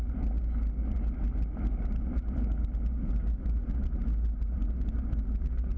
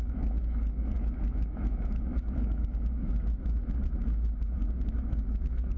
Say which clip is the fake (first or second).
second